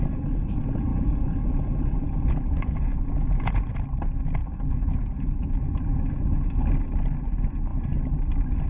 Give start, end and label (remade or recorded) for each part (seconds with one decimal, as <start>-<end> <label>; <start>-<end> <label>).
0.0-0.9 recorded; 0.9-3.7 remade; 3.7-4.4 recorded; 4.4-5.6 remade; 5.6-8.7 recorded